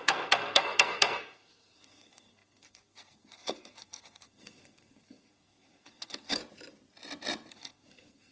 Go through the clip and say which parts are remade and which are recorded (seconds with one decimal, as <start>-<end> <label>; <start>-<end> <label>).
0.0-6.4 remade; 6.4-7.5 recorded; 7.5-8.3 remade